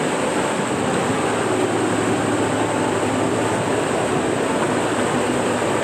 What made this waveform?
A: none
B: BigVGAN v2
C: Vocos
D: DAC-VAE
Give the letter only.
A